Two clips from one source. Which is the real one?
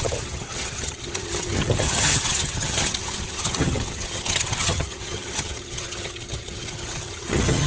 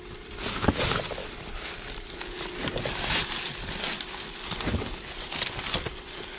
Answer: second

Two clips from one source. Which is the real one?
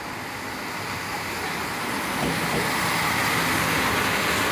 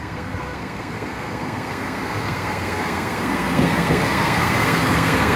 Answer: first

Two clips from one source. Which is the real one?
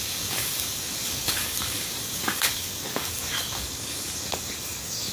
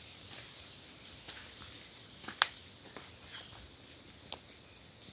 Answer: second